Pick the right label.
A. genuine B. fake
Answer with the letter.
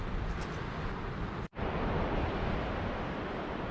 A